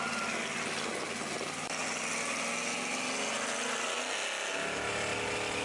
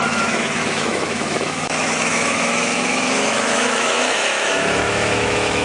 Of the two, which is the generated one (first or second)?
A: second